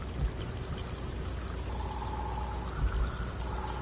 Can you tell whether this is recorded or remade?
recorded